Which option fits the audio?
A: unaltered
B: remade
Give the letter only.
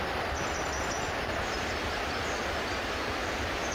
B